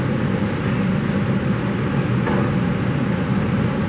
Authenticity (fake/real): real